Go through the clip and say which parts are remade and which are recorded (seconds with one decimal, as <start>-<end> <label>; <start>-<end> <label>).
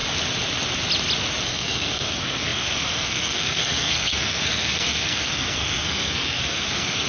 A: 0.0-1.4 recorded; 1.4-7.1 remade